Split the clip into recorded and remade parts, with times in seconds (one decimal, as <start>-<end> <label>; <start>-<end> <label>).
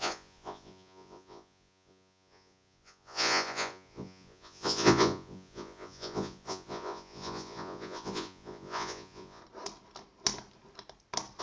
0.0-9.4 remade; 9.4-11.4 recorded